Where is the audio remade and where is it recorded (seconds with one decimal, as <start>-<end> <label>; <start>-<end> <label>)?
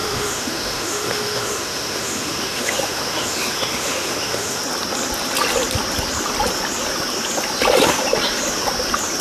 0.0-4.6 remade; 4.6-9.2 recorded